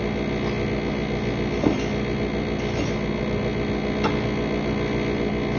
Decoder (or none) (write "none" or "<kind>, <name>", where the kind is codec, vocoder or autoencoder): none